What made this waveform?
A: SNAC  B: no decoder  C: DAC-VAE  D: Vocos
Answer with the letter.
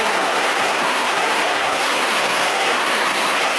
A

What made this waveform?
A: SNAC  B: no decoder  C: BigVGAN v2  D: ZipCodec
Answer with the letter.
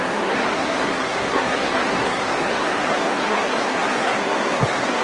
A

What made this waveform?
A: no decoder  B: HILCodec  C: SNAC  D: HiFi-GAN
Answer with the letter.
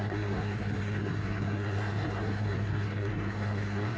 C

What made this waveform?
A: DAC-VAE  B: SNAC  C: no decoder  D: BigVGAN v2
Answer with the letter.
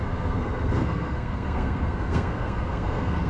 B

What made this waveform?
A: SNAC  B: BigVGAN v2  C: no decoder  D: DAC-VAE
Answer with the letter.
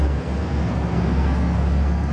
A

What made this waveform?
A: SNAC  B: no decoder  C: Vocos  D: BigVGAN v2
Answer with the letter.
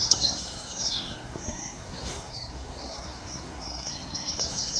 A